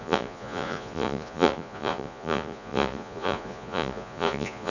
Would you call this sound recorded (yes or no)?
no